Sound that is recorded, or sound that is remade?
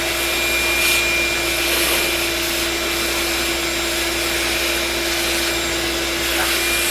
recorded